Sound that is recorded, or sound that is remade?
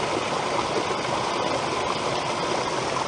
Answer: recorded